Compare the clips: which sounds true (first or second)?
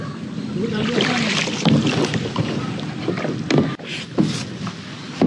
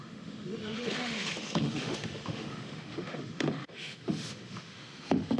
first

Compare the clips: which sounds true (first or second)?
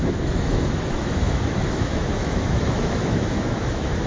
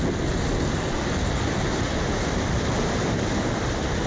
second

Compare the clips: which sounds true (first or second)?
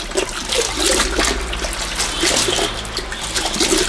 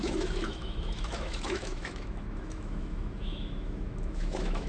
first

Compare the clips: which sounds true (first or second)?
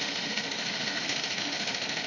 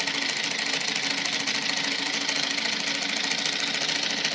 second